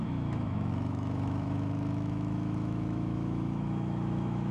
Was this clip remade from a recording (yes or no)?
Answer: yes